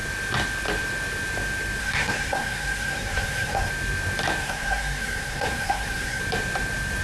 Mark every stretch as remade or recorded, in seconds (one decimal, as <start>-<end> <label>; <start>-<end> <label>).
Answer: 0.0-1.8 recorded; 1.8-3.7 remade; 3.7-4.4 recorded; 4.4-6.2 remade; 6.2-7.0 recorded